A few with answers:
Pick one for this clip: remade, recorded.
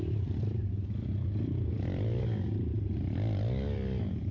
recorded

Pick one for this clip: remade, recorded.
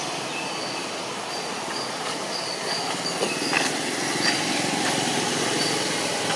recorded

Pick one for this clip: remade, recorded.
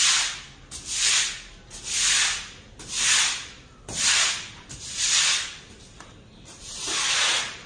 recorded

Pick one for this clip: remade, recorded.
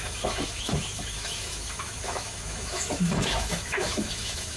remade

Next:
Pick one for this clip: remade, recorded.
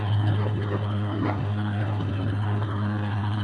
remade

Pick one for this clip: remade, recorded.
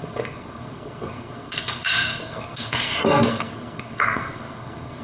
remade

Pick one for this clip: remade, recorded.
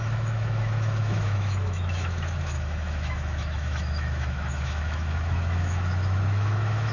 remade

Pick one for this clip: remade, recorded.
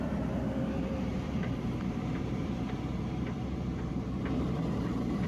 remade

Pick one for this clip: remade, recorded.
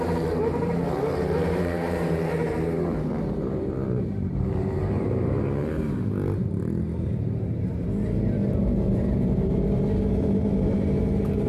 remade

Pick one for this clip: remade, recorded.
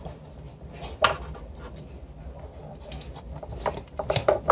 recorded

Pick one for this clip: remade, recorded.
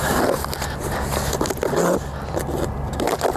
recorded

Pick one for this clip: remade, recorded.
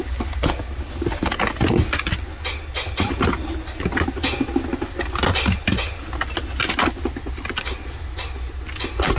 recorded